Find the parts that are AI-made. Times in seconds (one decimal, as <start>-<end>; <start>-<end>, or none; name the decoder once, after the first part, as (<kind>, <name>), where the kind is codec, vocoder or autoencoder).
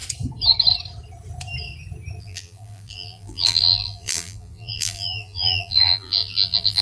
2.2-6.8 (vocoder, BigVGAN v2)